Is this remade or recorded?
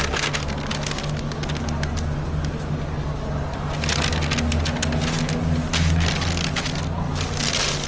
recorded